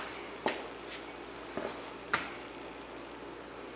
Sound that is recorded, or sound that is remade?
recorded